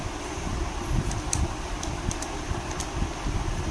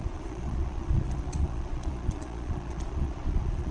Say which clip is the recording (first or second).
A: first